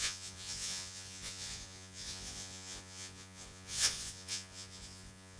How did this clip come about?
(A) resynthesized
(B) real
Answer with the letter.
A